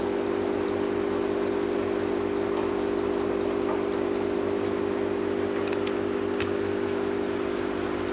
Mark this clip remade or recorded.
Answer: recorded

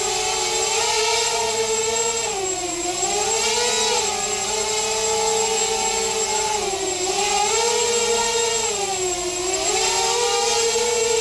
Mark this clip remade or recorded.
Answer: recorded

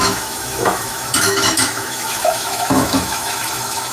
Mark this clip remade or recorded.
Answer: remade